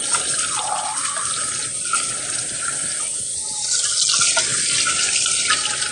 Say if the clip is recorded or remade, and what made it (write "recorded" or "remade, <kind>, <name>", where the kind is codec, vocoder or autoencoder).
recorded